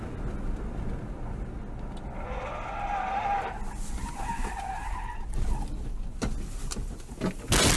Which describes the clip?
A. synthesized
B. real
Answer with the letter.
B